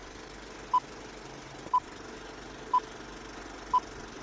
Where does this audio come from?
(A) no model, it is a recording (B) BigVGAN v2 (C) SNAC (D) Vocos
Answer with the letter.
A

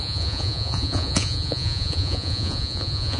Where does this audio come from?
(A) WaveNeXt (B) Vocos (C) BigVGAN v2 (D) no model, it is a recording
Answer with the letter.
B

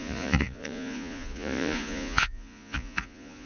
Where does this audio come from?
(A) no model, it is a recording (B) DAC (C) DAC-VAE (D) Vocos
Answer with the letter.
D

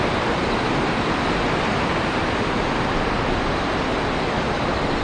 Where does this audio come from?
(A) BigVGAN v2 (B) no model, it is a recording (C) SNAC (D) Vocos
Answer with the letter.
B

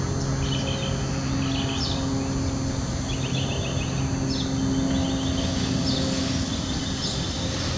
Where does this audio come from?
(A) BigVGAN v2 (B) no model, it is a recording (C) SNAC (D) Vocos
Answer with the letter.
B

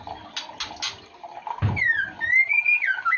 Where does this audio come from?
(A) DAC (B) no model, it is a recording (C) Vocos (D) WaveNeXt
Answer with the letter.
B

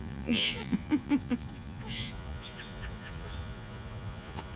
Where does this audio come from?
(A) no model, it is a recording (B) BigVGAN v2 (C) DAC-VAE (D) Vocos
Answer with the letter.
D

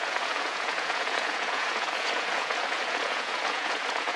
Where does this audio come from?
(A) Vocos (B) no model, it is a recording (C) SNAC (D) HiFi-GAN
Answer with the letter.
A